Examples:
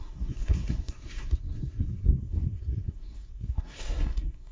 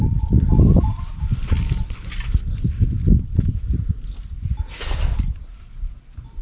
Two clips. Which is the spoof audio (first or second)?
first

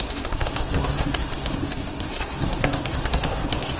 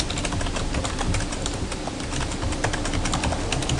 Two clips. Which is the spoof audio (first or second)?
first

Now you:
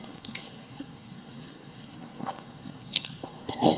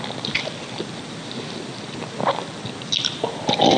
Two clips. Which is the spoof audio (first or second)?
first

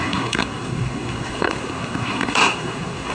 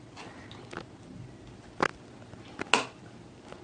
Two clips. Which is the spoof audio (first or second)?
first